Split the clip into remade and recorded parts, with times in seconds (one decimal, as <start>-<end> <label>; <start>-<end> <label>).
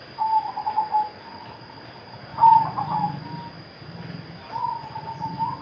0.0-2.3 recorded; 2.3-3.2 remade; 3.2-4.6 recorded; 4.6-5.6 remade